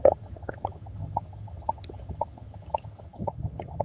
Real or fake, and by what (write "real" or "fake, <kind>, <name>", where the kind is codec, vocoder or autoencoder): fake, vocoder, HiFi-GAN